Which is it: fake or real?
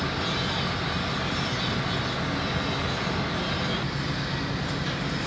real